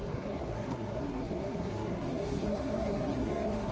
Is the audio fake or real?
fake